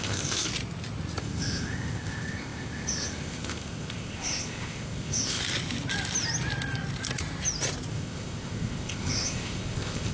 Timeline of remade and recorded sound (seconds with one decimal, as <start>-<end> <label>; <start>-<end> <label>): 0.0-0.5 remade; 0.5-1.2 recorded; 1.2-5.4 remade; 5.4-7.9 recorded; 7.9-10.1 remade